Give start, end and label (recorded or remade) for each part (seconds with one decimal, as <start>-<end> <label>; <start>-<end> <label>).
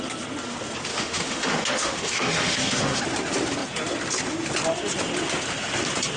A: 0.0-0.9 recorded; 0.9-3.0 remade; 3.0-6.2 recorded